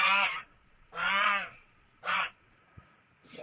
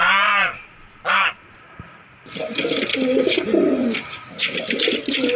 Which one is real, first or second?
second